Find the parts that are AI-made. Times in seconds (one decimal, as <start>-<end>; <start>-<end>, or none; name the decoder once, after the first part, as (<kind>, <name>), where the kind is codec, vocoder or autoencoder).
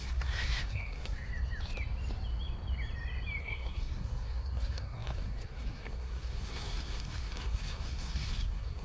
0.0-1.3 (codec, SNAC); 3.4-8.8